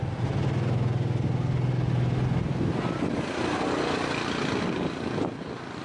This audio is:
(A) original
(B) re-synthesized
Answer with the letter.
A